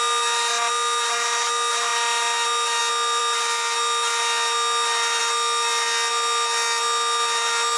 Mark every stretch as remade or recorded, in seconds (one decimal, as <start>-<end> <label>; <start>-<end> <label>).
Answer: 0.0-7.8 recorded